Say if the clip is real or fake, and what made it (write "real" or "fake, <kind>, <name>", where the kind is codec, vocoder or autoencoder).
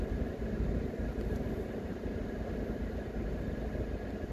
real